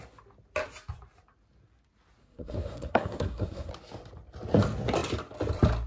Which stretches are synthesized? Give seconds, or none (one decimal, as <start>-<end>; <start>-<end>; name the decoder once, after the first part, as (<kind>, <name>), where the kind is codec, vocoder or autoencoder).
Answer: 2.2-3.7 (codec, SNAC)